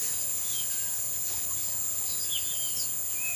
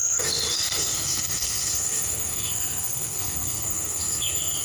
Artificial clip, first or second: second